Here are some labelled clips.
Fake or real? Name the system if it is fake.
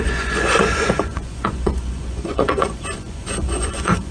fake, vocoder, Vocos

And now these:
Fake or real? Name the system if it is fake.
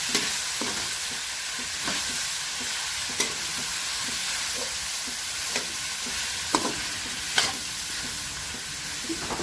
real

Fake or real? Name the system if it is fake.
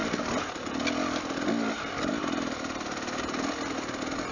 real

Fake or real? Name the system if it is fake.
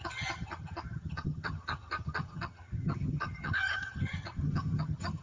fake, vocoder, HiFi-GAN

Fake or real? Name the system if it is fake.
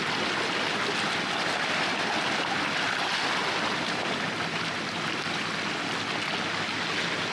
real